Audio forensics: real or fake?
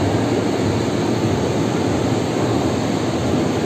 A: real